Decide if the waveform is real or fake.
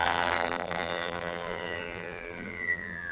fake